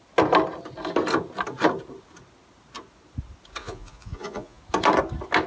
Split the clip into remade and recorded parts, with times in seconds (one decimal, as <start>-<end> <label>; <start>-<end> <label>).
0.0-3.6 recorded; 3.6-4.6 remade; 4.6-5.5 recorded